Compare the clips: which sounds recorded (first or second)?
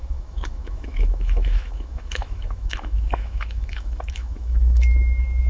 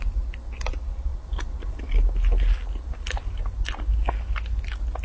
second